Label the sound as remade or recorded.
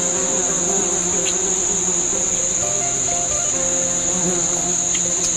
recorded